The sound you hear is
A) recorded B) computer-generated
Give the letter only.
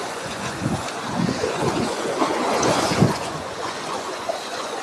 B